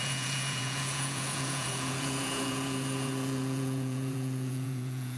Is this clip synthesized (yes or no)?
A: yes